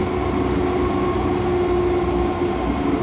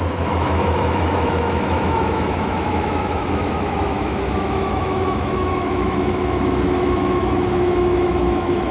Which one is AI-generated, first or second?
second